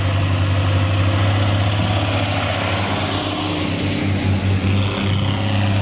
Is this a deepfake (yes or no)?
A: no